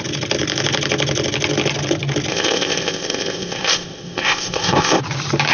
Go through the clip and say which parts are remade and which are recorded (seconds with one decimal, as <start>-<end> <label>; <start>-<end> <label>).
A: 0.0-2.3 recorded; 2.3-5.0 remade; 5.0-5.5 recorded